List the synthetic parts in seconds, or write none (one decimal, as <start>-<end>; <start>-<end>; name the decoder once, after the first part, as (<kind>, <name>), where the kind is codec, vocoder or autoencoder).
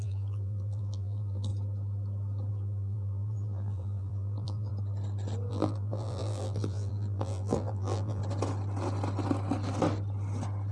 0.0-1.5 (vocoder, BigVGAN v2); 2.5-4.7; 5.5-8.2